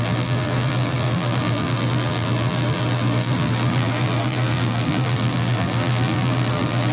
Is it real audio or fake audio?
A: fake